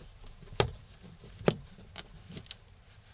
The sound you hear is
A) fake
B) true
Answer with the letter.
B